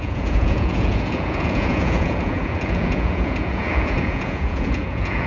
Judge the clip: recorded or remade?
remade